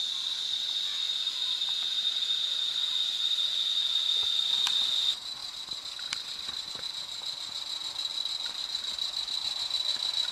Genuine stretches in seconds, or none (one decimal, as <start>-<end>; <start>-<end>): 0.0-5.4; 6.7-8.1; 9.4-10.3